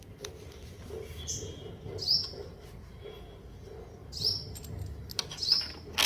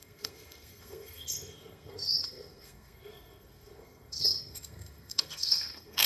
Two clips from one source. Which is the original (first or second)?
first